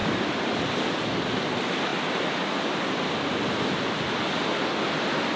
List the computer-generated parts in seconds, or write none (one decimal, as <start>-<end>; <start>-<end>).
0.0-0.5

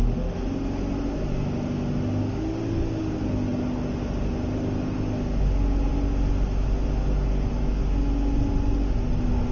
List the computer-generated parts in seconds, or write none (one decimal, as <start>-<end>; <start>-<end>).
none

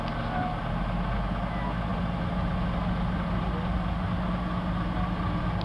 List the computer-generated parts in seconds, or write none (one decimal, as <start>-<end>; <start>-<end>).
none

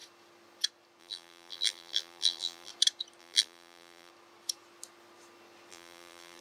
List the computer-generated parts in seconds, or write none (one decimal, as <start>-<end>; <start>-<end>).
1.0-2.7; 3.2-4.1; 5.7-6.4

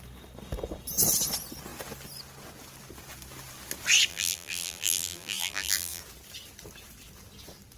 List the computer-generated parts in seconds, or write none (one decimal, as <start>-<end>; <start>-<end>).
4.1-6.0

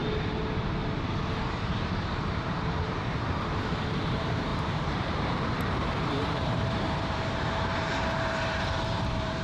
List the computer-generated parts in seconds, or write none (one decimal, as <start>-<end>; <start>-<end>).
1.6-9.4

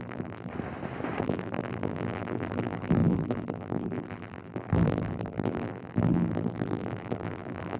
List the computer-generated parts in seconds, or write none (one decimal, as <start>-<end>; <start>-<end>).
0.0-0.5; 1.2-7.8